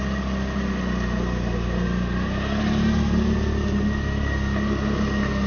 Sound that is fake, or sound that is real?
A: real